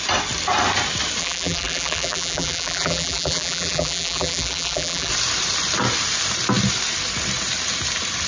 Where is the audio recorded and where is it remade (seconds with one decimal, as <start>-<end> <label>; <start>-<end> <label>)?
0.0-1.2 recorded; 1.2-5.1 remade; 5.1-8.3 recorded